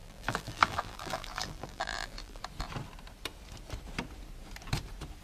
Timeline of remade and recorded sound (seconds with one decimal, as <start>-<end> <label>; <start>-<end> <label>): 0.0-2.4 remade; 2.4-5.2 recorded